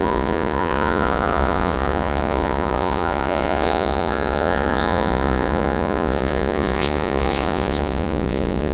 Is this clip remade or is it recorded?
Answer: remade